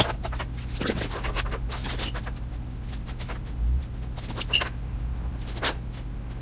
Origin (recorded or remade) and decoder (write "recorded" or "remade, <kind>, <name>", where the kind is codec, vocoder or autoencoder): recorded